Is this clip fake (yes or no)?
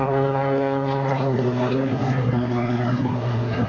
yes